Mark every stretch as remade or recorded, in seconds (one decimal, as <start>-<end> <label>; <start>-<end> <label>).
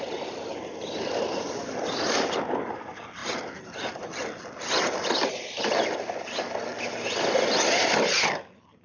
0.0-8.8 recorded